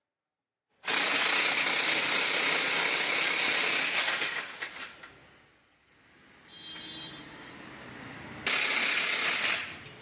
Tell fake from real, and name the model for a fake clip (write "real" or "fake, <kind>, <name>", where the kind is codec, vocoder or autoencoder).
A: real